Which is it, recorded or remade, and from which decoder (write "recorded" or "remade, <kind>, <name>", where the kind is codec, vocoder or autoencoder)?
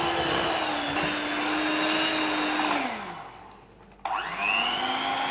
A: recorded